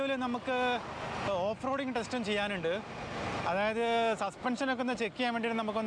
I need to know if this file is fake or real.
real